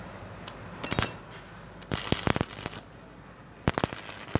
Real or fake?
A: real